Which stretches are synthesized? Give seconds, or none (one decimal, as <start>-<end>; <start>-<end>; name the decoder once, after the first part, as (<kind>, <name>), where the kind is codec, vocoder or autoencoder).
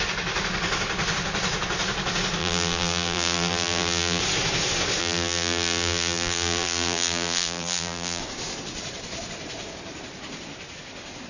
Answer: 2.4-4.2 (vocoder, BigVGAN v2); 5.0-8.2